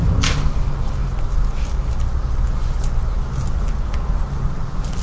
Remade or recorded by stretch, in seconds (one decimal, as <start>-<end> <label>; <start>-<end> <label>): 0.0-5.0 recorded